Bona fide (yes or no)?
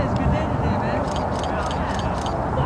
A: yes